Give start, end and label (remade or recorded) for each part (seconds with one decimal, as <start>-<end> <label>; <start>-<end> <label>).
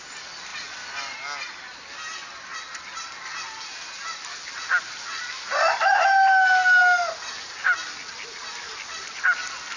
0.0-9.8 recorded